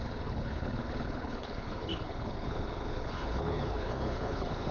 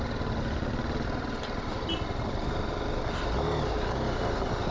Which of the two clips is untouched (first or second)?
second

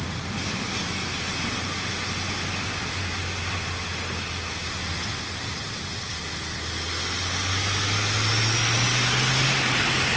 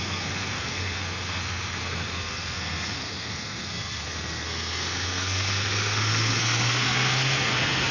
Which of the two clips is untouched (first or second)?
first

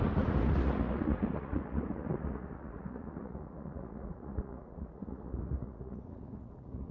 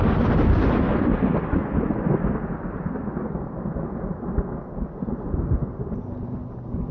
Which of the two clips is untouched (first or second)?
second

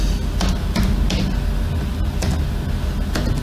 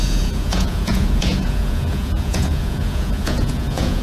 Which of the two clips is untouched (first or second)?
first